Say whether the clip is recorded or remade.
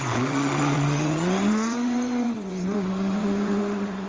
remade